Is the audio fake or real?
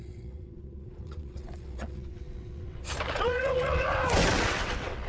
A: fake